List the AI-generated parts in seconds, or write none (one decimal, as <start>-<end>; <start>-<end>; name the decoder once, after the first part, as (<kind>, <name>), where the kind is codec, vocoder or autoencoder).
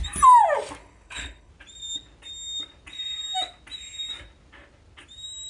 0.8-1.5 (codec, HILCodec)